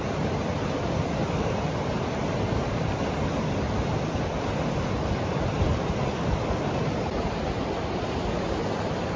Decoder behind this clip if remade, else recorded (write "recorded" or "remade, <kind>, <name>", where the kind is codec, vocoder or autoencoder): recorded